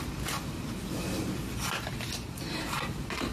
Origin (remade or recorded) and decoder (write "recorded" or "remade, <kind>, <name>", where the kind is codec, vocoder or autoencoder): recorded